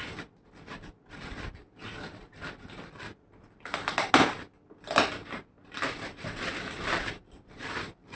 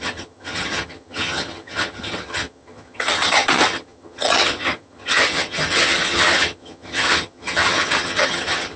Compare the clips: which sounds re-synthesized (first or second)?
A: second